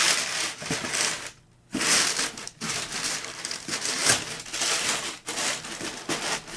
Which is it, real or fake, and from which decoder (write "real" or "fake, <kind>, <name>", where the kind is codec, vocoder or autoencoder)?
real